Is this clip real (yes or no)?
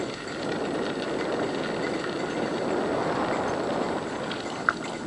yes